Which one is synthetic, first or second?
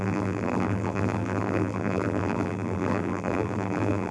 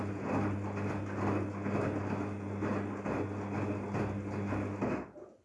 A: first